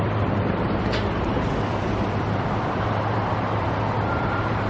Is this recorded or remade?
remade